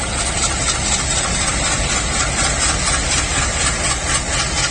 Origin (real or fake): real